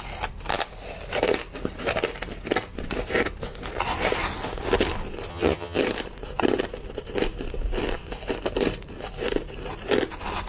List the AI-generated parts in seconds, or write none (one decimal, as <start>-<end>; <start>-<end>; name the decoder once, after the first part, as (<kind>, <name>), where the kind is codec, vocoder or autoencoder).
5.3-5.8 (vocoder, HiFi-GAN)